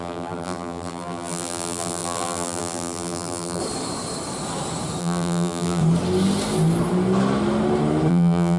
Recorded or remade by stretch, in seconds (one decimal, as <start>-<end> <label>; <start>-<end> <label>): 0.0-3.6 remade; 3.6-5.0 recorded; 5.0-5.8 remade; 5.8-8.1 recorded; 8.1-8.6 remade